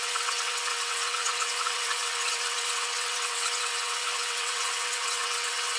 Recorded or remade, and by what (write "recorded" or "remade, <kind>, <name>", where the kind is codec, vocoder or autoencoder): remade, vocoder, WaveNeXt